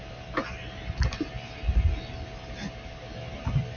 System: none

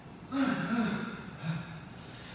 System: vocoder, BigVGAN v2